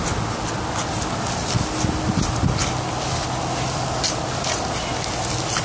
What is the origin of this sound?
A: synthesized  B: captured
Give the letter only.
B